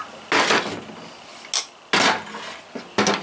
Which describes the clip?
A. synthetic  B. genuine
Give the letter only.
B